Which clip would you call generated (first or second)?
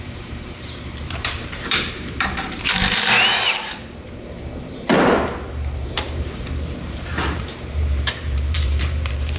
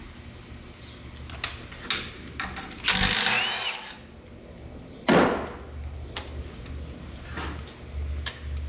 first